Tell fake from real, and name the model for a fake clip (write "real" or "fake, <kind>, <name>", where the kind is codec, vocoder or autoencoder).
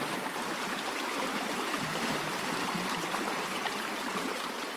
fake, vocoder, BigVGAN v2